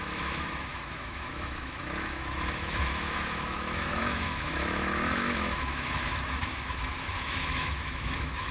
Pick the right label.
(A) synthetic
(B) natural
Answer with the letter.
A